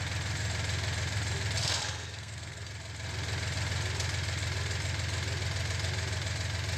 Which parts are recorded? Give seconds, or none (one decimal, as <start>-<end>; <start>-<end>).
0.0-1.6; 2.7-6.8